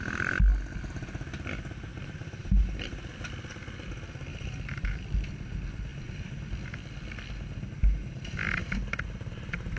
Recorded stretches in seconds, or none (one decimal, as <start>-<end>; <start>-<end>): 0.0-1.9; 3.1-4.3; 5.0-8.6